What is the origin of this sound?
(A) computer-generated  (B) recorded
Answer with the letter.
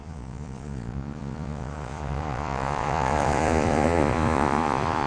A